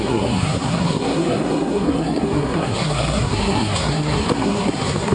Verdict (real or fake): fake